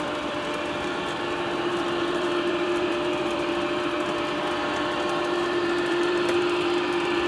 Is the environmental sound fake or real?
fake